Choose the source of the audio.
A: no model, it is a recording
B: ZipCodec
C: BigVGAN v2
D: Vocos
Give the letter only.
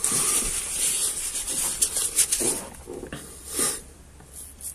C